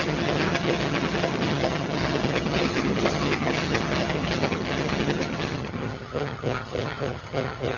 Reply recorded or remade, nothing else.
remade